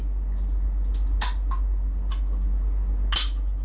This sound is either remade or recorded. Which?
recorded